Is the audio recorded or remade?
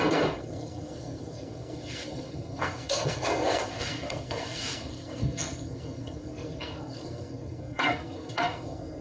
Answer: remade